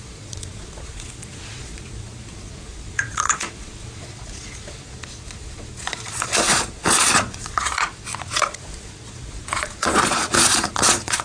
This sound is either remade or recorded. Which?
remade